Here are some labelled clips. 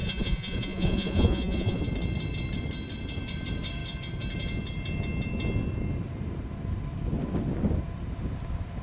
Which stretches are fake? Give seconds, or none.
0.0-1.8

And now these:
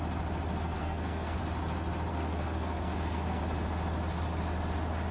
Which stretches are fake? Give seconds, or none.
0.8-1.4; 2.1-3.4

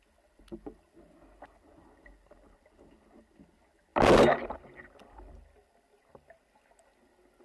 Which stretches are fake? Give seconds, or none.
none

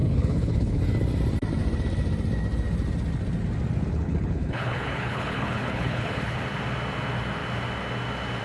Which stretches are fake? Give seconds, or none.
0.0-0.8; 3.9-6.4

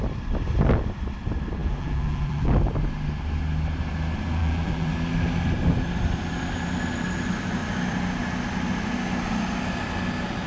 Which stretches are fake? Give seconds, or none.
1.6-2.5; 4.4-4.9